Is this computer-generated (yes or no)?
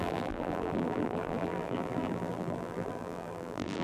yes